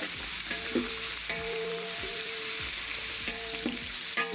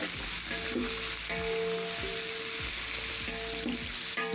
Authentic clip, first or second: second